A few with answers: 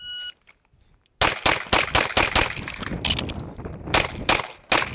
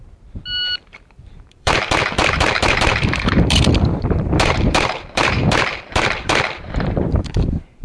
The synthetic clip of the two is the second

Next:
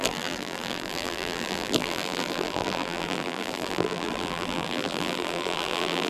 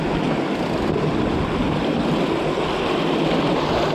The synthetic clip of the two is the first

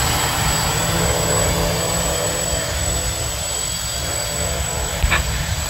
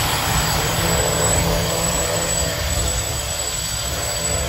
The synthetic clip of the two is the second